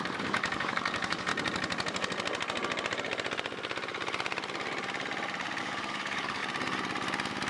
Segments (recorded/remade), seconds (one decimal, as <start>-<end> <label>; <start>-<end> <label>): 0.0-1.3 remade; 1.3-5.6 recorded; 5.6-6.4 remade; 6.4-7.5 recorded